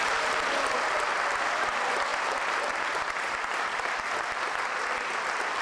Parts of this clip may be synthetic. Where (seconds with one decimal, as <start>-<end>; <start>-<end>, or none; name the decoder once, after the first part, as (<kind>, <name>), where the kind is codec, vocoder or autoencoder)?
none